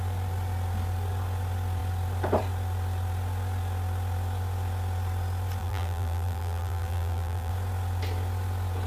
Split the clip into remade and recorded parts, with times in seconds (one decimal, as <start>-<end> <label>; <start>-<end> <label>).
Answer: 0.0-5.6 recorded; 5.6-7.5 remade; 7.5-8.9 recorded